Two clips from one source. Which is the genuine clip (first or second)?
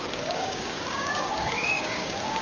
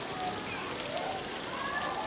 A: second